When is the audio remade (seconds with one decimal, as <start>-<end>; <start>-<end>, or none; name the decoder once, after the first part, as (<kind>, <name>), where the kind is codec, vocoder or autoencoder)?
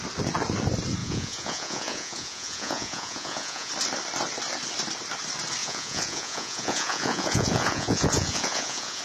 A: 1.0-3.7 (vocoder, Vocos); 5.6-9.0